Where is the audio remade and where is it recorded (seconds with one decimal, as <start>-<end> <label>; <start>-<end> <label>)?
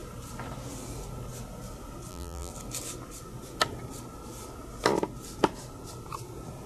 0.0-2.1 recorded; 2.1-2.5 remade; 2.5-6.7 recorded